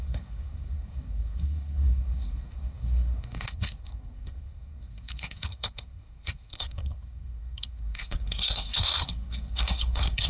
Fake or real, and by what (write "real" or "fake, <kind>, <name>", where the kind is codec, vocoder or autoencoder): fake, codec, SNAC